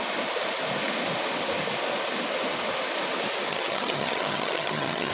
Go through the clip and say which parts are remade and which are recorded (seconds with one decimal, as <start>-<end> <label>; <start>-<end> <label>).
0.0-3.5 recorded; 3.5-5.1 remade

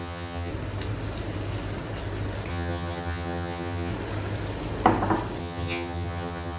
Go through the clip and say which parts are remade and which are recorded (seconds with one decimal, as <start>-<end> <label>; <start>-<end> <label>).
0.0-0.5 remade; 0.5-2.5 recorded; 2.5-3.9 remade; 3.9-5.4 recorded; 5.4-6.6 remade

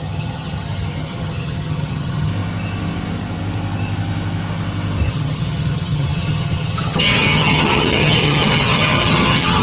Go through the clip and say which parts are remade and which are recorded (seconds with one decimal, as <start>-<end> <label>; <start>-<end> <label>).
0.0-2.3 remade; 2.3-5.1 recorded; 5.1-9.6 remade

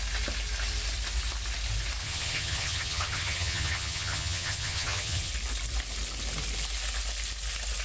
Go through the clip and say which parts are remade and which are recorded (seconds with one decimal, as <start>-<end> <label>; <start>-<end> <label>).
0.0-2.0 recorded; 2.0-5.3 remade; 5.3-7.8 recorded

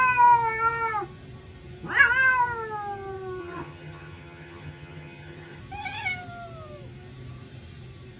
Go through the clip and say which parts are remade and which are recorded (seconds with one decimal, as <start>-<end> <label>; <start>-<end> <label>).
0.0-3.4 recorded; 3.4-5.6 remade; 5.6-8.2 recorded

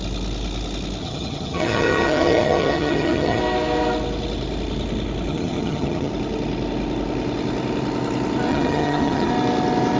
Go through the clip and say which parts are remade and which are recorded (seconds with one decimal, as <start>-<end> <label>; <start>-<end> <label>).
0.0-1.0 recorded; 1.0-3.4 remade; 3.4-5.3 recorded; 5.3-6.1 remade; 6.1-8.5 recorded; 8.5-9.3 remade; 9.3-10.0 recorded

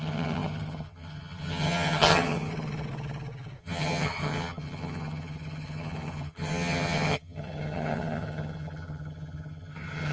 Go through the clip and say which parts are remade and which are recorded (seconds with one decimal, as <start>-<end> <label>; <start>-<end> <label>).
0.0-2.5 remade; 2.5-3.6 recorded; 3.6-10.1 remade